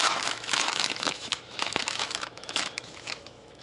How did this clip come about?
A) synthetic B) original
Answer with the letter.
A